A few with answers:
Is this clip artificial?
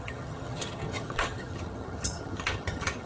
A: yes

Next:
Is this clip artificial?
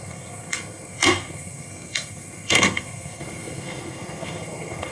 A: yes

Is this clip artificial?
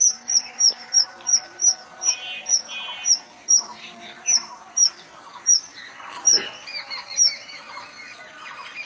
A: yes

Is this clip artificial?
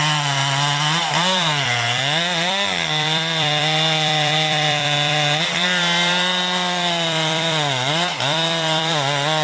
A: yes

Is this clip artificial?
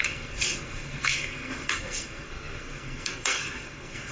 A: yes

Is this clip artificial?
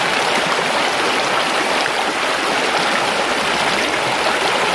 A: no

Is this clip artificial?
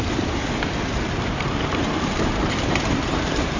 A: yes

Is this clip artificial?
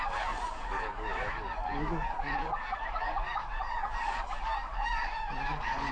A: yes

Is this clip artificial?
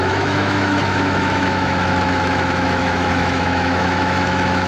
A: yes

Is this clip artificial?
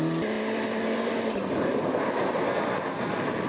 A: no